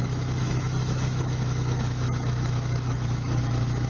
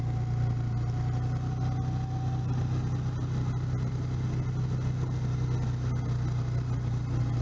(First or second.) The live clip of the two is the second